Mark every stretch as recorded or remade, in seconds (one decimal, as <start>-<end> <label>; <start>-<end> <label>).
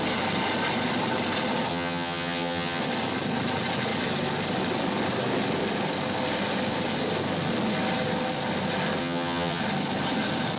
0.0-1.7 recorded; 1.7-2.8 remade; 2.8-9.0 recorded; 9.0-9.6 remade; 9.6-10.6 recorded